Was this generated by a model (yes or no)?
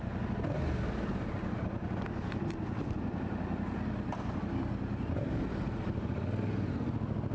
no